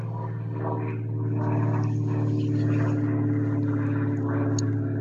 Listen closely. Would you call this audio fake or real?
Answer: real